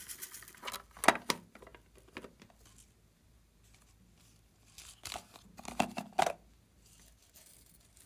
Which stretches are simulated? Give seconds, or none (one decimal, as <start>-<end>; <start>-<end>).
none